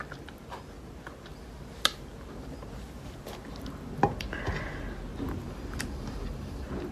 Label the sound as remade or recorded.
recorded